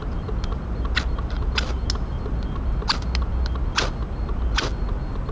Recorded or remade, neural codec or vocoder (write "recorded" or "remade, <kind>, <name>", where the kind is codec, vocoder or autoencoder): recorded